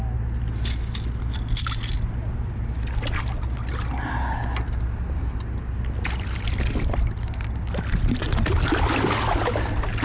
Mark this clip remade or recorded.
recorded